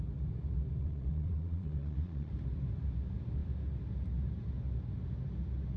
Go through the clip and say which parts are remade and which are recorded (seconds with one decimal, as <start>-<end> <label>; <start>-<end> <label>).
0.0-0.8 recorded; 0.8-2.3 remade; 2.3-5.8 recorded